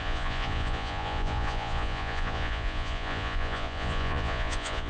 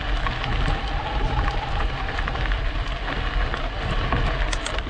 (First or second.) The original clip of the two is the second